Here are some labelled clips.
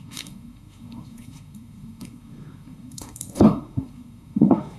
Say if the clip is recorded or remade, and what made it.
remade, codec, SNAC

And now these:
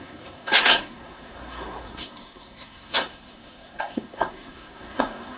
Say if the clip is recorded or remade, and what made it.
remade, codec, SNAC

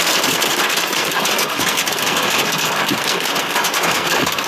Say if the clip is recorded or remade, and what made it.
remade, codec, SNAC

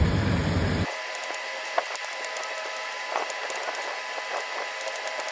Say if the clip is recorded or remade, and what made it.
recorded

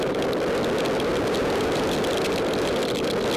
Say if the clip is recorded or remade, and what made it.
recorded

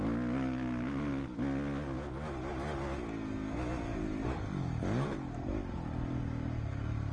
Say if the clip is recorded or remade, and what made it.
recorded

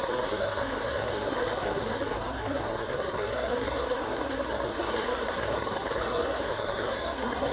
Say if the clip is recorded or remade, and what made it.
remade, codec, SNAC